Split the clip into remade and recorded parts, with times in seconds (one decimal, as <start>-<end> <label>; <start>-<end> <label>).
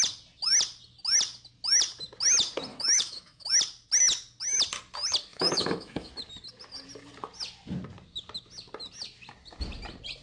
0.0-2.7 recorded; 2.7-3.5 remade; 3.5-5.3 recorded; 5.3-6.1 remade; 6.1-10.2 recorded